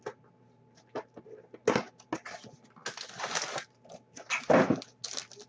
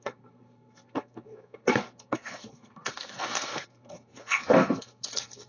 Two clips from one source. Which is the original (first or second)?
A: first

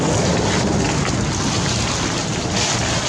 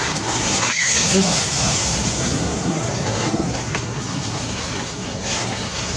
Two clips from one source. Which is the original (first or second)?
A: first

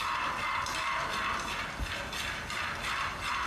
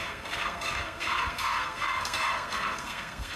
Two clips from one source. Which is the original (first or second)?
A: first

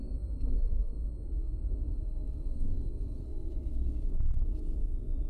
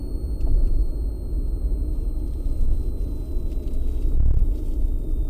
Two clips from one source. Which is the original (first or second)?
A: second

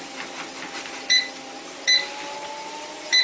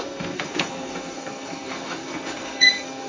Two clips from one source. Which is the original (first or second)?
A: first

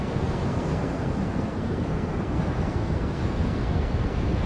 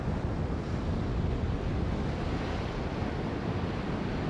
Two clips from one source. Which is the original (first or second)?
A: second